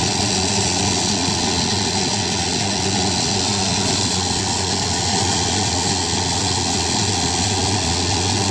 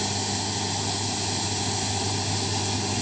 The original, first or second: second